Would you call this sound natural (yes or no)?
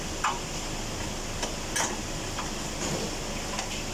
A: yes